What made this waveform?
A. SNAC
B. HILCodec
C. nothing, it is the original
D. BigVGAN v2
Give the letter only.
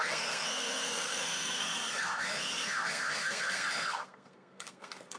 A